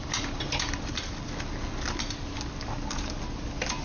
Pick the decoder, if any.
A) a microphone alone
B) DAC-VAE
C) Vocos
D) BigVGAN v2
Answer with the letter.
A